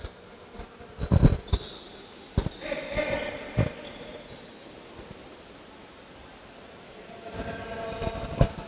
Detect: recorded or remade recorded